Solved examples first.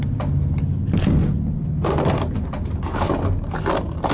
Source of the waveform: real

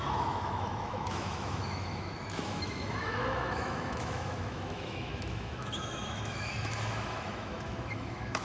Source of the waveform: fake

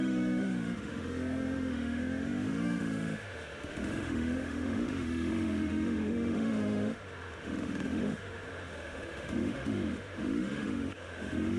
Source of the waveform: fake